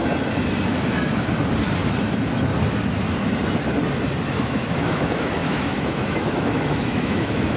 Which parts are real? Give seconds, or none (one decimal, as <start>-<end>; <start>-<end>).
0.0-4.4